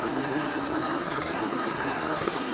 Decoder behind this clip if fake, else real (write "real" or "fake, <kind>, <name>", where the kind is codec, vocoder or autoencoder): fake, codec, SNAC